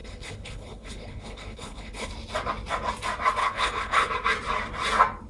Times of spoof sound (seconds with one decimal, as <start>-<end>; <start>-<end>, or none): 0.0-2.1; 3.4-4.1